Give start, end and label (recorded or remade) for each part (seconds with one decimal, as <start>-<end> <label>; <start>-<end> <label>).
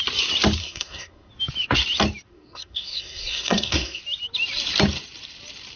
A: 0.0-0.6 recorded; 0.6-1.3 remade; 1.3-2.3 recorded; 2.3-4.0 remade; 4.0-5.8 recorded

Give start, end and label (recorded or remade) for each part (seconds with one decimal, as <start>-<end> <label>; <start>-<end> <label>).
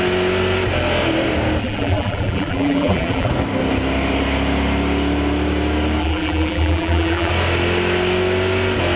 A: 0.0-1.6 recorded; 1.6-3.3 remade; 3.3-6.0 recorded; 6.0-7.3 remade; 7.3-9.0 recorded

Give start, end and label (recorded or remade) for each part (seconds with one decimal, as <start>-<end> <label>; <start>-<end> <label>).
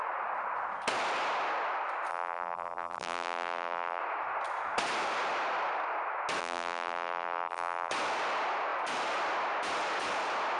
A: 0.0-2.1 recorded; 2.1-4.0 remade; 4.0-6.4 recorded; 6.4-7.9 remade; 7.9-10.6 recorded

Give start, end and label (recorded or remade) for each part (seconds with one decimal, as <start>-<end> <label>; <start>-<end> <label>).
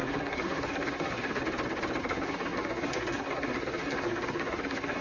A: 0.0-1.4 remade; 1.4-2.0 recorded; 2.0-5.0 remade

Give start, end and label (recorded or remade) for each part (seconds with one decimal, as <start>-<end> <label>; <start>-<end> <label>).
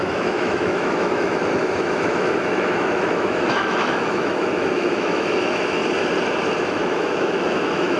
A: 0.0-5.8 remade; 5.8-6.6 recorded; 6.6-8.0 remade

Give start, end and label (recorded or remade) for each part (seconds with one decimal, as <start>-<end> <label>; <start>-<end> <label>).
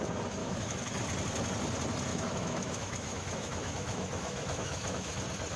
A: 0.0-0.4 recorded; 0.4-1.0 remade; 1.0-2.1 recorded; 2.1-5.1 remade; 5.1-5.6 recorded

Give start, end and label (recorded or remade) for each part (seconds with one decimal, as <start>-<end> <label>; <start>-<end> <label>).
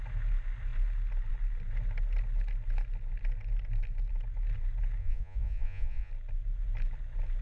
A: 0.0-5.0 recorded; 5.0-6.1 remade; 6.1-7.4 recorded